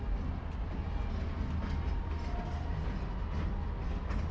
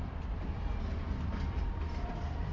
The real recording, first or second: first